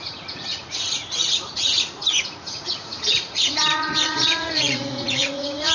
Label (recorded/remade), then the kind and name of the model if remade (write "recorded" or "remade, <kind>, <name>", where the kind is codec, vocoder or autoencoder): remade, vocoder, Vocos